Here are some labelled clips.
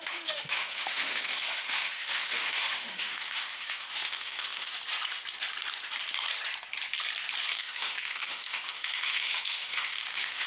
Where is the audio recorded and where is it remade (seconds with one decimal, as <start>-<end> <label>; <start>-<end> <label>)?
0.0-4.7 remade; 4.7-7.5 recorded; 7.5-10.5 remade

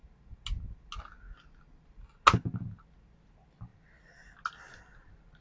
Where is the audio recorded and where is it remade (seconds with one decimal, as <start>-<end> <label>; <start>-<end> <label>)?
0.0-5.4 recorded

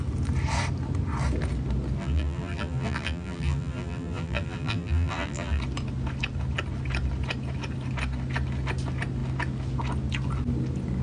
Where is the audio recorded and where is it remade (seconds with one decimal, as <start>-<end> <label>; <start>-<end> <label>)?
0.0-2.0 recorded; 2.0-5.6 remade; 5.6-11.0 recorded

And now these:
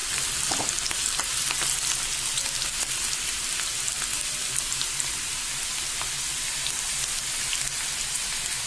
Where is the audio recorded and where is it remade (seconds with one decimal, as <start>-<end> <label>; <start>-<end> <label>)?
0.0-8.7 recorded